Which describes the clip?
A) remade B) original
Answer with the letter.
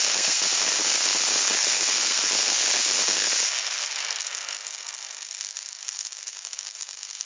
A